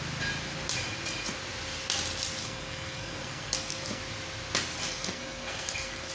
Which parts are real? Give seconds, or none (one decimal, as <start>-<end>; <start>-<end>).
0.0-2.4; 4.0-4.9